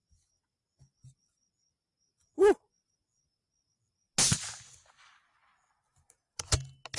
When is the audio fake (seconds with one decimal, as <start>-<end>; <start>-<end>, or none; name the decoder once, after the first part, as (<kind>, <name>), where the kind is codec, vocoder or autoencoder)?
none